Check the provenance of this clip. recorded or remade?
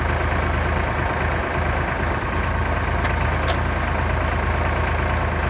recorded